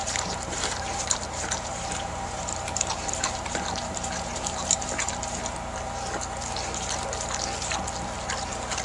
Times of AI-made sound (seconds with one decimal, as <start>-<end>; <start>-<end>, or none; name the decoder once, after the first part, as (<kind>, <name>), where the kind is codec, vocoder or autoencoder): 0.0-5.2 (vocoder, BigVGAN v2)